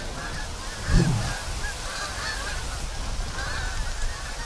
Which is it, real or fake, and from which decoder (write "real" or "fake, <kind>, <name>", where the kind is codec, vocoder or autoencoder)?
real